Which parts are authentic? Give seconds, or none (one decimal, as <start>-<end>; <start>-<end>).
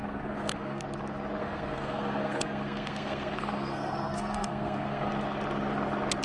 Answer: 0.8-1.4; 5.1-6.2